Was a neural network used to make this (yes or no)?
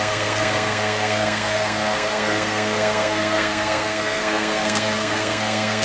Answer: yes